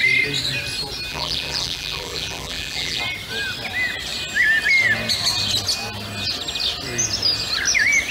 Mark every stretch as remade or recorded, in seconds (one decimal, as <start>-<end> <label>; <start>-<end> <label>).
0.0-1.1 recorded; 1.1-3.0 remade; 3.0-8.1 recorded